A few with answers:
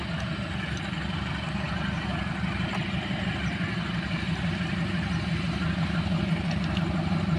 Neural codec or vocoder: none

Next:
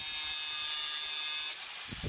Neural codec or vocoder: none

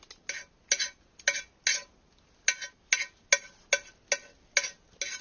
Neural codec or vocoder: none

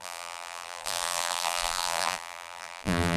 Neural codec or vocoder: vocoder, BigVGAN v2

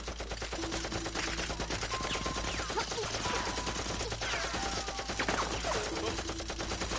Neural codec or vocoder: none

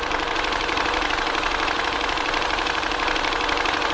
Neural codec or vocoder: vocoder, BigVGAN v2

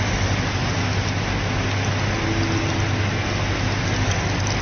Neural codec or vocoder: none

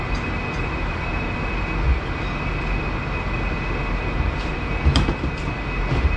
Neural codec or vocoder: none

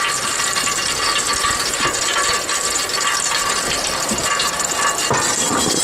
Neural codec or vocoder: vocoder, BigVGAN v2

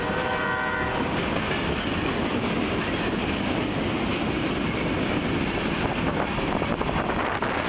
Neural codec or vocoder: none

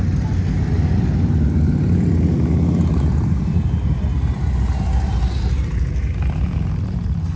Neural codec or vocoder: none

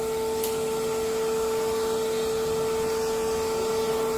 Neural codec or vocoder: none